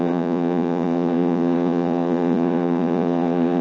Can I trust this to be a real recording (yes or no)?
no